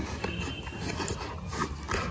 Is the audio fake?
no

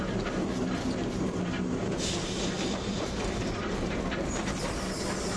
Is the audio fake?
no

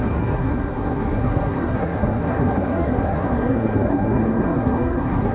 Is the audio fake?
yes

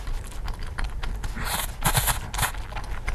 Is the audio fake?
no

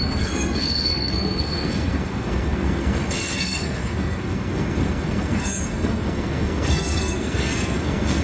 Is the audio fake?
yes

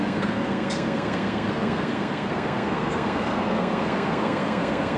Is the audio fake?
yes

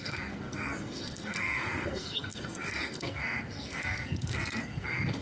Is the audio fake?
yes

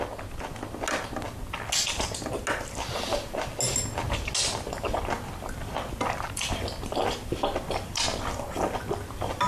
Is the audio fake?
no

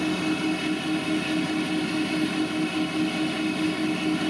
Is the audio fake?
no